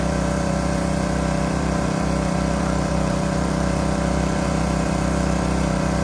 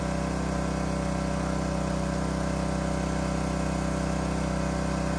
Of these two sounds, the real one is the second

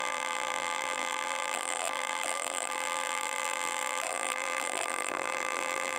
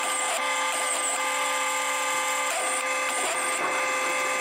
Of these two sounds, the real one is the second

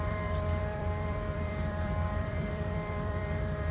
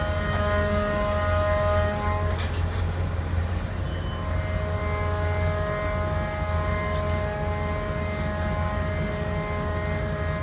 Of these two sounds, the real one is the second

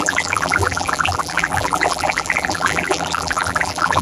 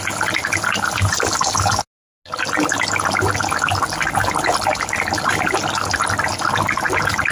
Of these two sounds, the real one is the second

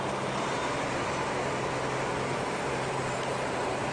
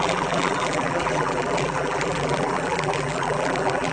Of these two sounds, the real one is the first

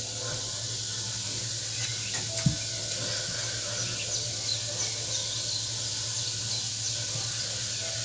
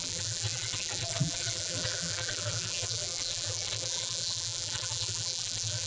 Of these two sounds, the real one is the first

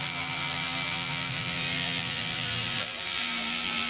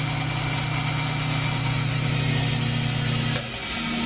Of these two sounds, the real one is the second